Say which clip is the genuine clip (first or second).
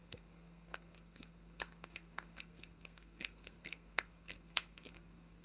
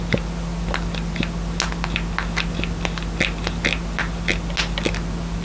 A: second